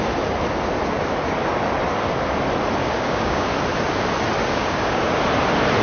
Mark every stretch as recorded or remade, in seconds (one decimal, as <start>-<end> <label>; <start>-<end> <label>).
0.0-2.8 recorded; 2.8-3.5 remade; 3.5-4.4 recorded; 4.4-5.2 remade; 5.2-5.8 recorded